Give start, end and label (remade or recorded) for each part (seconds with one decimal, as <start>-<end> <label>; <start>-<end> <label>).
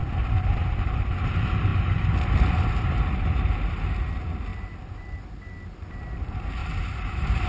0.0-6.6 recorded; 6.6-7.5 remade